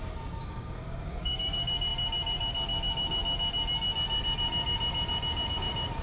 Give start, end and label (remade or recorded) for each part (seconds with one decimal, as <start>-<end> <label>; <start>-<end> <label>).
0.0-0.4 recorded; 0.4-1.4 remade; 1.4-6.0 recorded